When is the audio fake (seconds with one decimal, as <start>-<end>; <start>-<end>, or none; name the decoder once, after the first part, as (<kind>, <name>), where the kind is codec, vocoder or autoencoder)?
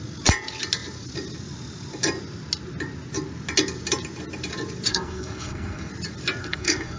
4.9-5.9 (codec, SNAC); 6.4-7.0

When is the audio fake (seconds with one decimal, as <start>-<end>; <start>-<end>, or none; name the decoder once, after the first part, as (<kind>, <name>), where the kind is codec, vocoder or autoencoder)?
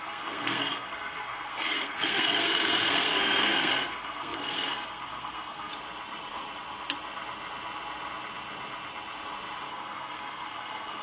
0.0-5.7 (codec, SNAC); 9.7-11.0